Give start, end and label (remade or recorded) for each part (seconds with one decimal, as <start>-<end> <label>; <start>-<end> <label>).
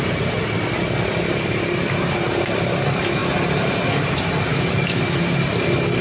0.0-4.5 recorded; 4.5-5.0 remade; 5.0-6.0 recorded